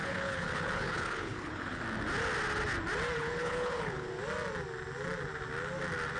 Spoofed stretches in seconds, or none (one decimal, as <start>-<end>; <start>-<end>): 0.0-1.8; 3.2-4.1